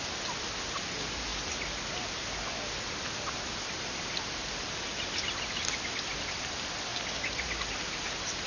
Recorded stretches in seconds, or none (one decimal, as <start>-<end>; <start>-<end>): 0.0-8.5